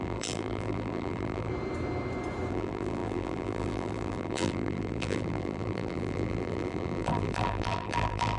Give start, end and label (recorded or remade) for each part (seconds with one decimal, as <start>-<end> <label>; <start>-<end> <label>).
0.0-1.5 remade; 1.5-2.5 recorded; 2.5-8.4 remade